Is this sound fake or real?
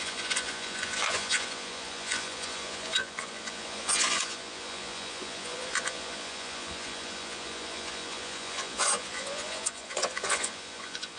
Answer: fake